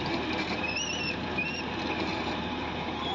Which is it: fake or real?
real